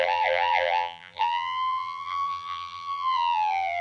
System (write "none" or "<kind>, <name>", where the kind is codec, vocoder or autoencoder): vocoder, BigVGAN v2